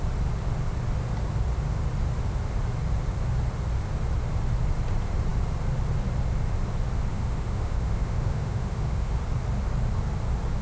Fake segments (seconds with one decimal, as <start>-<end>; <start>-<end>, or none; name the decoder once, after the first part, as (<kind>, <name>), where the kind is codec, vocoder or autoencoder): 7.1-9.2 (autoencoder, DAC-VAE)